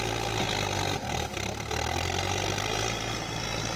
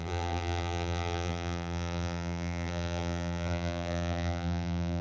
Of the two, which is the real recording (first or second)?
first